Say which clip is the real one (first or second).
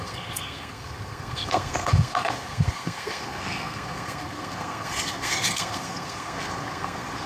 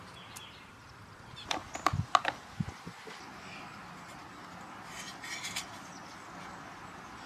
second